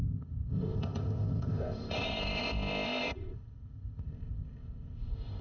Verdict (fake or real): fake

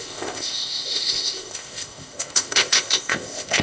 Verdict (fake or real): fake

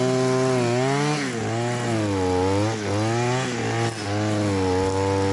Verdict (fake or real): real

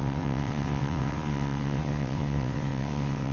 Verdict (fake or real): fake